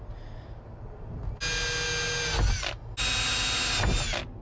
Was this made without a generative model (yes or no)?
yes